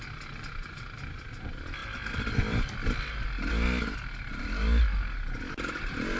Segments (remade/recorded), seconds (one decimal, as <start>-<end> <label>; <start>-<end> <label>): 0.0-6.2 recorded